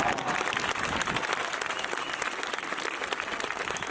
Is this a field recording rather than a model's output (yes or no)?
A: yes